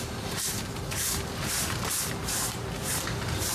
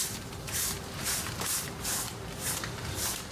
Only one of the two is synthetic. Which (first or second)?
second